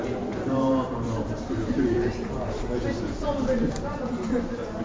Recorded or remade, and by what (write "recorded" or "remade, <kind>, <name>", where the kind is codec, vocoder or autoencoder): remade, vocoder, BigVGAN v2